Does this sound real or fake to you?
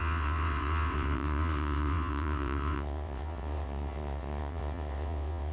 fake